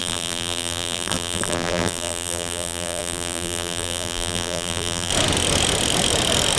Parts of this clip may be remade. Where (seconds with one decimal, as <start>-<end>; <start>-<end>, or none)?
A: 0.0-5.1